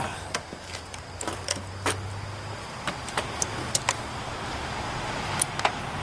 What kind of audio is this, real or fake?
real